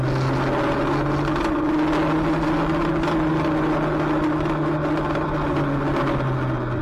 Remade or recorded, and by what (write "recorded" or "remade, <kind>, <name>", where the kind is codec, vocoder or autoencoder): recorded